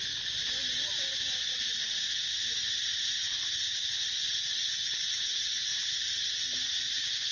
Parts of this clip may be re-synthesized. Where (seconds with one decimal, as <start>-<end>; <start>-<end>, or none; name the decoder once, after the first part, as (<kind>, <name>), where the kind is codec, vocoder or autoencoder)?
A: 0.0-5.7 (vocoder, BigVGAN v2); 6.2-7.3